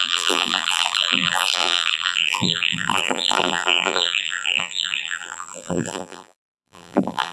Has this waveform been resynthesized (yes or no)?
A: yes